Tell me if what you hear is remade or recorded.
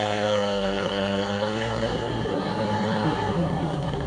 remade